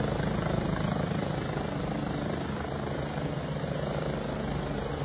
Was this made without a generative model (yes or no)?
no